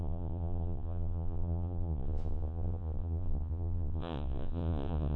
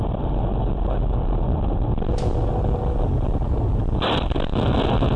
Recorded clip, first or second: second